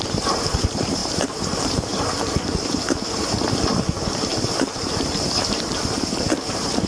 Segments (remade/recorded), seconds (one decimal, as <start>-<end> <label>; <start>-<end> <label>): 0.0-6.9 remade